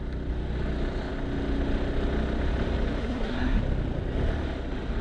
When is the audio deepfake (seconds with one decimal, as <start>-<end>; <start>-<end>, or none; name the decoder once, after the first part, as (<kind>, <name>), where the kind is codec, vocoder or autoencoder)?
3.0-3.6 (codec, SNAC)